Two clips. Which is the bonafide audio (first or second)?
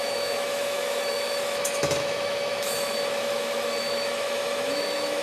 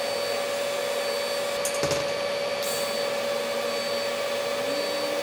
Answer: second